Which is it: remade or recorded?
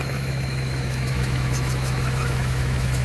remade